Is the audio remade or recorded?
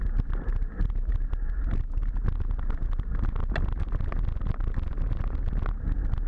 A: recorded